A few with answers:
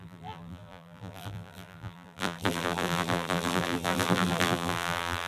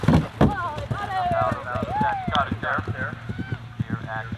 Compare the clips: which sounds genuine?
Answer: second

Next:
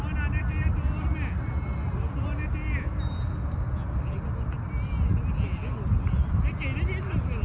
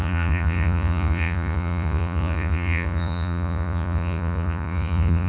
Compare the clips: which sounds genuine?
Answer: first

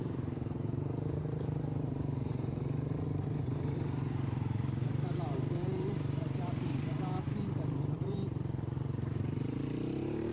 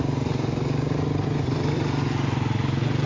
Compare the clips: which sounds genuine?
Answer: second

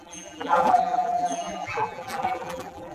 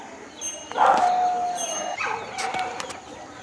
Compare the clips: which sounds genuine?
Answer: second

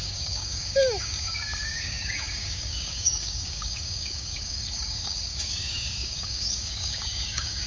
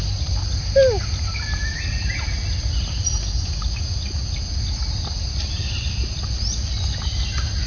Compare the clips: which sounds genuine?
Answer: second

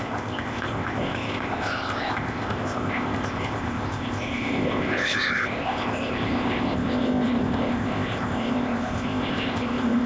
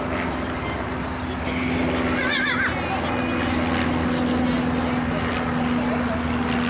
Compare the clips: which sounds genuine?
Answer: second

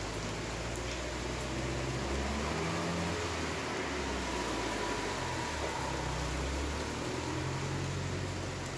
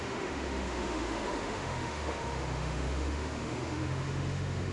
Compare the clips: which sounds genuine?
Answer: first